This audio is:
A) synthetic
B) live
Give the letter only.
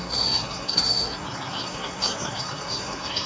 A